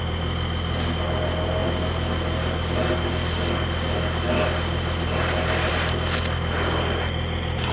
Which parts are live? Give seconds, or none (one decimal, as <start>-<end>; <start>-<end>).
0.0-7.7